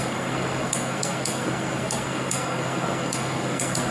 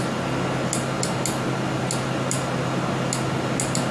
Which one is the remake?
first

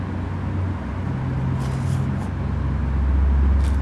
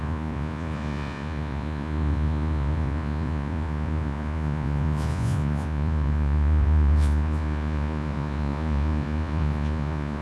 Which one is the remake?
second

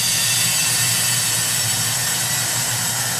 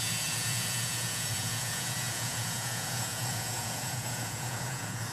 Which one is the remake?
second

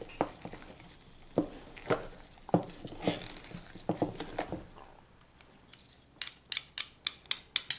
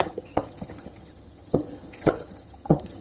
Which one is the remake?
second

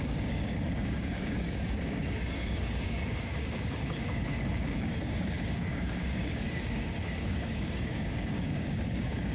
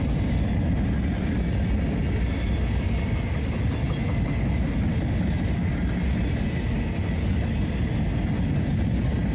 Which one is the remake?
first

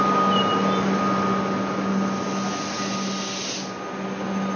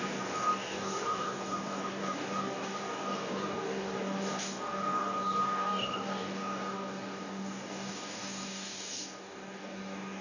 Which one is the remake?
second